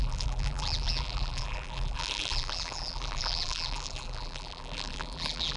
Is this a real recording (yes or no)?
no